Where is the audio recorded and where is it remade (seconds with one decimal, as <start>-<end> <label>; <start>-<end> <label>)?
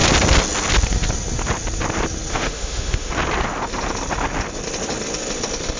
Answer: 0.0-2.3 recorded; 2.3-3.1 remade; 3.1-5.8 recorded